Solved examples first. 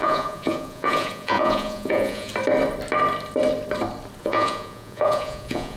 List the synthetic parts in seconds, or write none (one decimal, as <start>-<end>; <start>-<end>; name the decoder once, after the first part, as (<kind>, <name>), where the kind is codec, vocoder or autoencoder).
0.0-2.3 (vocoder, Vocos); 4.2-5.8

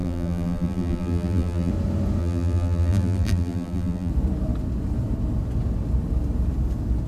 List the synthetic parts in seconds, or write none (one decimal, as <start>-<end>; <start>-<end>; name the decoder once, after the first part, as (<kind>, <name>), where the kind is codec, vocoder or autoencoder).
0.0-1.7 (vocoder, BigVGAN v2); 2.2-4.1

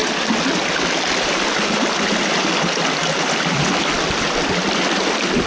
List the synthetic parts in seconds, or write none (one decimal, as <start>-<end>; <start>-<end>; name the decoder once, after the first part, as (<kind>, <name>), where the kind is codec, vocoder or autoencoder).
none

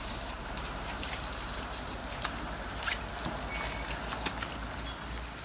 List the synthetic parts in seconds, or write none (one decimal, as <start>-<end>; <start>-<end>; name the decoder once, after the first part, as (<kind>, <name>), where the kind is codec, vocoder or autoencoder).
0.0-2.0 (vocoder, BigVGAN v2)

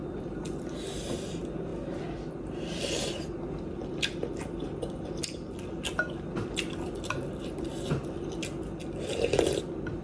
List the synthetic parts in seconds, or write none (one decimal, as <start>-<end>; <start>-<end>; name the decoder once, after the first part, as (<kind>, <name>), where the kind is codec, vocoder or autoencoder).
none